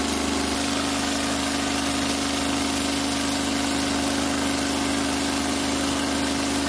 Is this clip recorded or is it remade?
recorded